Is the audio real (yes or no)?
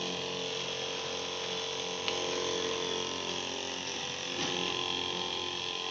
yes